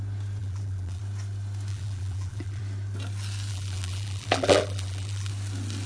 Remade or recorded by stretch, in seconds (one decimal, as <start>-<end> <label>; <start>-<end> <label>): 0.0-0.4 recorded; 0.4-1.0 remade; 1.0-1.7 recorded; 1.7-2.6 remade; 2.6-3.5 recorded; 3.5-5.3 remade; 5.3-5.9 recorded